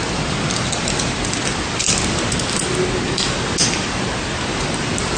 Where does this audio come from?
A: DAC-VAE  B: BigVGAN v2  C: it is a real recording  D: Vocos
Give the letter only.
C